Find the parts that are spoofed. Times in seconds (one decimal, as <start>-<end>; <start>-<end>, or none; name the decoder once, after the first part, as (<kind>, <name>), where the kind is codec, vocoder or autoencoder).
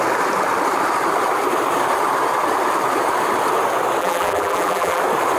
4.0-5.0 (vocoder, BigVGAN v2)